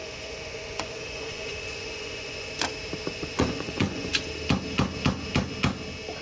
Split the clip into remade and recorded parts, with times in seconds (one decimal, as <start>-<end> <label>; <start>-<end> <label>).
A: 0.0-2.5 remade; 2.5-3.1 recorded; 3.1-4.1 remade; 4.1-6.2 recorded